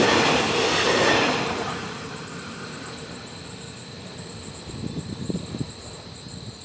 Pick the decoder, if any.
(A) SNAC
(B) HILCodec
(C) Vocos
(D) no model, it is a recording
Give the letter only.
D